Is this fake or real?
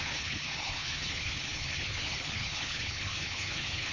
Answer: fake